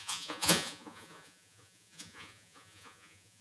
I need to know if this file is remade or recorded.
remade